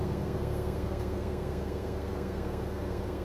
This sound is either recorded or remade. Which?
remade